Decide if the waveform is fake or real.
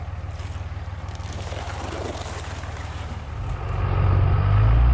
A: real